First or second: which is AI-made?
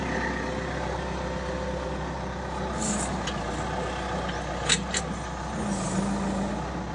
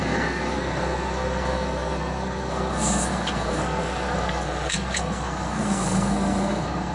second